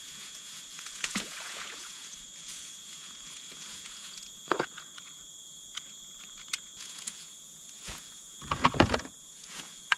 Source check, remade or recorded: remade